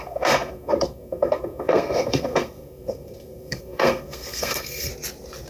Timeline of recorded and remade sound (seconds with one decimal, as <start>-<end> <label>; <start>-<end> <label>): 0.0-4.9 remade; 4.9-5.5 recorded